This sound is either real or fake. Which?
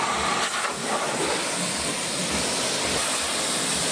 real